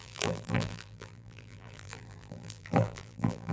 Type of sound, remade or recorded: remade